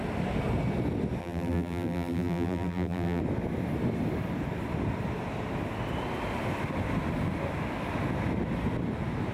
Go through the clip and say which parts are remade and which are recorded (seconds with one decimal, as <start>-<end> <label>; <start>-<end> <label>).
0.0-1.2 recorded; 1.2-3.2 remade; 3.2-9.3 recorded